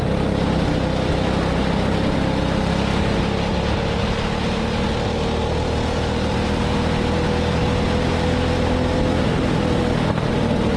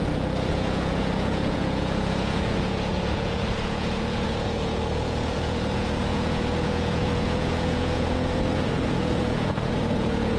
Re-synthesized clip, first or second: second